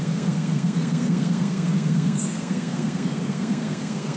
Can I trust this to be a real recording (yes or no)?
no